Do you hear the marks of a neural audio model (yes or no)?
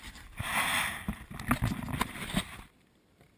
no